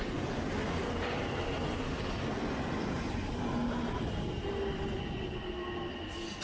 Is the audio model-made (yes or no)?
no